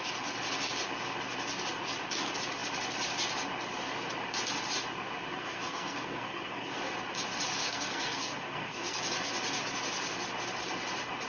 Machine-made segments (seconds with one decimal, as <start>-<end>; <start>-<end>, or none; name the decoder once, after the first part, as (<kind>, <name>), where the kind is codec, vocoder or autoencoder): 5.3-6.8 (codec, SNAC); 7.6-9.0